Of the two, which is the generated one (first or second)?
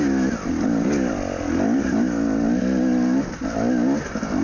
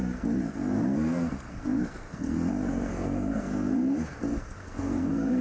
second